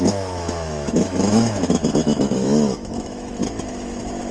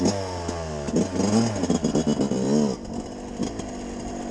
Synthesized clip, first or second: first